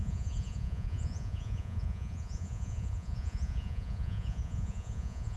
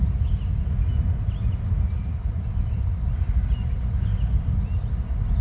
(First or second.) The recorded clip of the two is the second